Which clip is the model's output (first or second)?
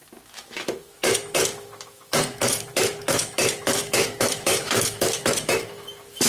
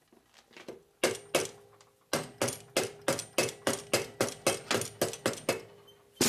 first